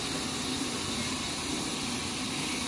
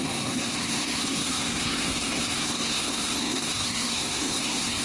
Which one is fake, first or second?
second